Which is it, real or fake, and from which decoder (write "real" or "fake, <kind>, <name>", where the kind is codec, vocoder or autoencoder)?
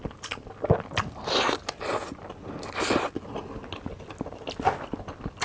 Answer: real